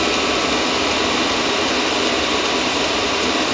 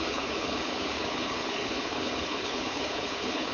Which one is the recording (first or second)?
first